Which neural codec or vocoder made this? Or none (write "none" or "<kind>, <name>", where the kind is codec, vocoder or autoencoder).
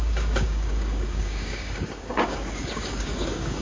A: codec, DAC